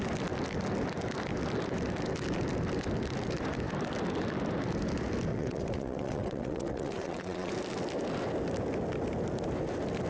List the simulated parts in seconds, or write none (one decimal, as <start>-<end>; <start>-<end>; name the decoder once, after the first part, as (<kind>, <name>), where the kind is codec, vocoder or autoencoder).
5.3-7.5 (vocoder, WaveNeXt)